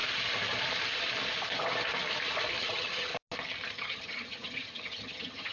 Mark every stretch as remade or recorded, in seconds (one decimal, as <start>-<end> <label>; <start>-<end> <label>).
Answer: 0.0-2.6 recorded; 2.6-3.1 remade; 3.1-3.7 recorded; 3.7-5.5 remade